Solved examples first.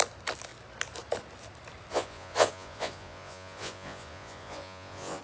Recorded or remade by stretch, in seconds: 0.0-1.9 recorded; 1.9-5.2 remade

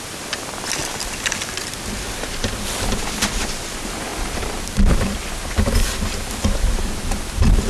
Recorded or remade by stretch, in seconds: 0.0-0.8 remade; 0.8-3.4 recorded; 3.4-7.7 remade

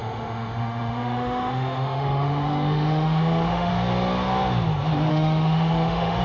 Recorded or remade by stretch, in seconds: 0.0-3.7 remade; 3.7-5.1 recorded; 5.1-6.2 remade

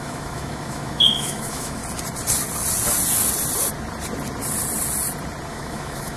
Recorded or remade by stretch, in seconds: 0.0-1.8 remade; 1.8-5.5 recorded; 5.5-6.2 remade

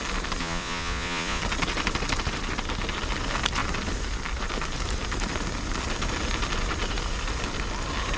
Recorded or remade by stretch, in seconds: 0.0-0.4 recorded; 0.4-1.4 remade; 1.4-8.2 recorded

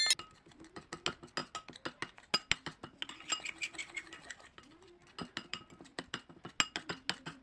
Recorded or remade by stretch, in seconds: 0.0-7.4 recorded